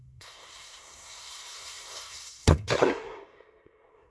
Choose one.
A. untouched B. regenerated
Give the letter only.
B